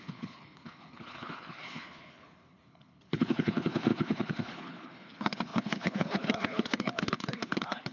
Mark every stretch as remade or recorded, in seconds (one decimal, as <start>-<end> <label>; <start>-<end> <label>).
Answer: 0.0-7.9 remade